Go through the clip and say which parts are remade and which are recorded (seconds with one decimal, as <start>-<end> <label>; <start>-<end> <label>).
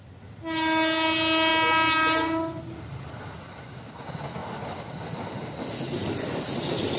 0.0-7.0 recorded